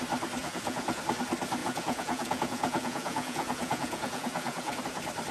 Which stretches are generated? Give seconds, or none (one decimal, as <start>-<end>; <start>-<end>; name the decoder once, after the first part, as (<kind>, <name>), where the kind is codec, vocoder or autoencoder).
0.4-1.0 (vocoder, Vocos); 1.6-4.8